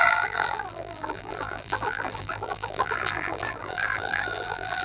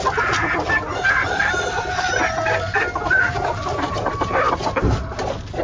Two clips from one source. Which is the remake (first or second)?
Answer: first